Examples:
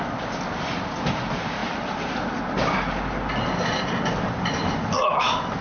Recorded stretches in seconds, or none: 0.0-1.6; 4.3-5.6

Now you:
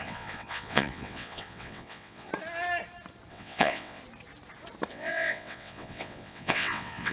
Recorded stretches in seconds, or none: 2.3-3.3; 4.0-4.9

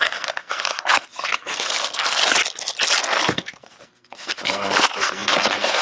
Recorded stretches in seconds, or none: 2.2-3.0